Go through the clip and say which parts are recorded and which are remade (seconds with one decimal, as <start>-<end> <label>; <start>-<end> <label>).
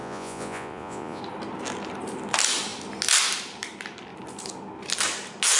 0.0-1.2 remade; 1.2-5.6 recorded